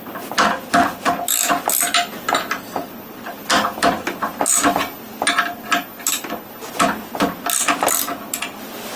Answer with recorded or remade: recorded